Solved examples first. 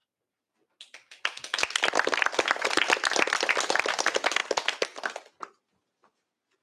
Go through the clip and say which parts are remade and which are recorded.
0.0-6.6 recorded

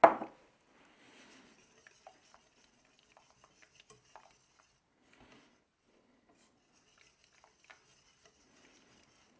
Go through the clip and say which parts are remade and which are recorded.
0.0-9.4 recorded

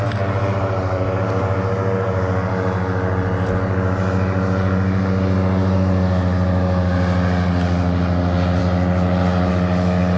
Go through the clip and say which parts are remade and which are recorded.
0.0-10.2 recorded

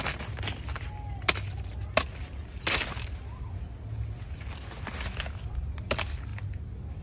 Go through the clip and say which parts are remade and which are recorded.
0.0-7.0 recorded

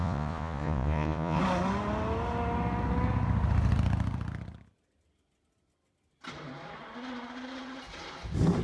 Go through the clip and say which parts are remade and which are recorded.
0.0-1.4 remade; 1.4-8.6 recorded

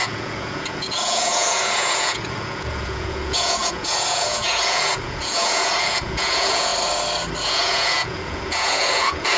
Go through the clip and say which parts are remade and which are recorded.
0.0-6.7 remade; 6.7-7.4 recorded; 7.4-9.4 remade

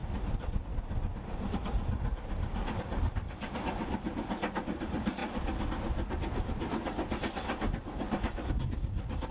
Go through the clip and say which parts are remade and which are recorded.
0.0-9.3 recorded

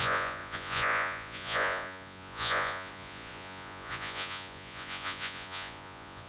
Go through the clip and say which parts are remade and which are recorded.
0.0-6.3 remade